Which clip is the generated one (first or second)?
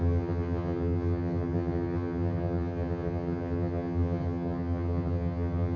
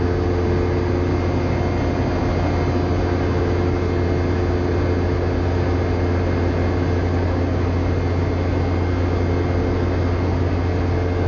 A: first